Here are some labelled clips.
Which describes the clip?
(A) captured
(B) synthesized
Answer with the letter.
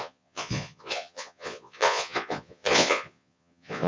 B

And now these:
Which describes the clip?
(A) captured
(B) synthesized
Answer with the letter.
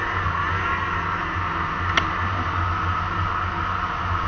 A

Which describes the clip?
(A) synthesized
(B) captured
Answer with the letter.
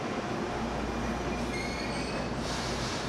B